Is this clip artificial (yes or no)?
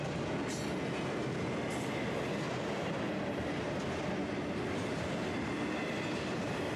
no